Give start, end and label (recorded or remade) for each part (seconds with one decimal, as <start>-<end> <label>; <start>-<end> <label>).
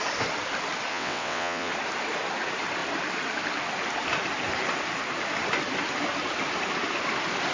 0.0-0.9 recorded; 0.9-1.7 remade; 1.7-7.5 recorded